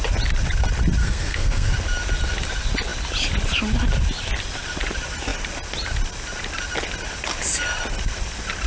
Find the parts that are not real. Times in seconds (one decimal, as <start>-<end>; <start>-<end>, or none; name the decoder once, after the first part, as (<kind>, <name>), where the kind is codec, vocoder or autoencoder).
1.0-1.7 (codec, SNAC)